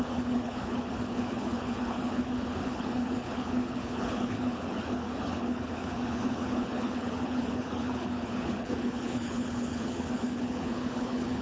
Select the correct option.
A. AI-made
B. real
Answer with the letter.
A